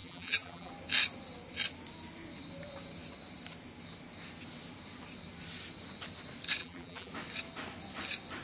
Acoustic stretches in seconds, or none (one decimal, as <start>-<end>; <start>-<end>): 0.7-6.6; 7.1-8.4